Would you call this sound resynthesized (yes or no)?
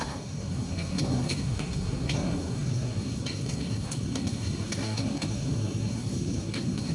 yes